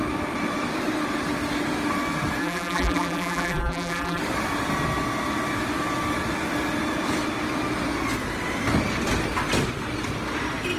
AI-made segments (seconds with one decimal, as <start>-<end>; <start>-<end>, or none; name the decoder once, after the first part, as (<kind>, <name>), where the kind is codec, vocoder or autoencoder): 2.4-4.2 (vocoder, BigVGAN v2)